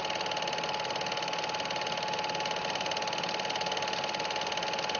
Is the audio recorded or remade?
recorded